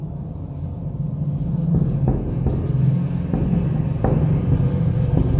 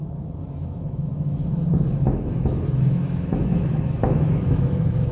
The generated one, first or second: second